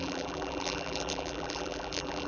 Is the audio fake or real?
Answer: fake